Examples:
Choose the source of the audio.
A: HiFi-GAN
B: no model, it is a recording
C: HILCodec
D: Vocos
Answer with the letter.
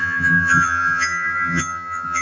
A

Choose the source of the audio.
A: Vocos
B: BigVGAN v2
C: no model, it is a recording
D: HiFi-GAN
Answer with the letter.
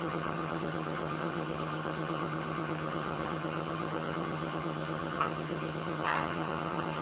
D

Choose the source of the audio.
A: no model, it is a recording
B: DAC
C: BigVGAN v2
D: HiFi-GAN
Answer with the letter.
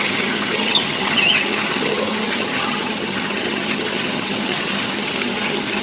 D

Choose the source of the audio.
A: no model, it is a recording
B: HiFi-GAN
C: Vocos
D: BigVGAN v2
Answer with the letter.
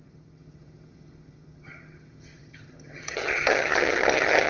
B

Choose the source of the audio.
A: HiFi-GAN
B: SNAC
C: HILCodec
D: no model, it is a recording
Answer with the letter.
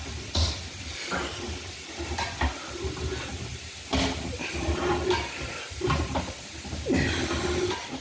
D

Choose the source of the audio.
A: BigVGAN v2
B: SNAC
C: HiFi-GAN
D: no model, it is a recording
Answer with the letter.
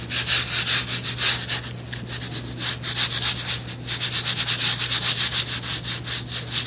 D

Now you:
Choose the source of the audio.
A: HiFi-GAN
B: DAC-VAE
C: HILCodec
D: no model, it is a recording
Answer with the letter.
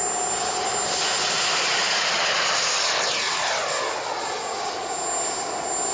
D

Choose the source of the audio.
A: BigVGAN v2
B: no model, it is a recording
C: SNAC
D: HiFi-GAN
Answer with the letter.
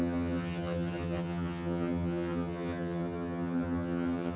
D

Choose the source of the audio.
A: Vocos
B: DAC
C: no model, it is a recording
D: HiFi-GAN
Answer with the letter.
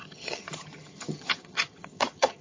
D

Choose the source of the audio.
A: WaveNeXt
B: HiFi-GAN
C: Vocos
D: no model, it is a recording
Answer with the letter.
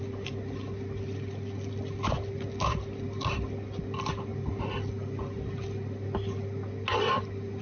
D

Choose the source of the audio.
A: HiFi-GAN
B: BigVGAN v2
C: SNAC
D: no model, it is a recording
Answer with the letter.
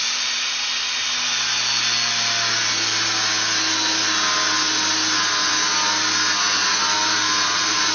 D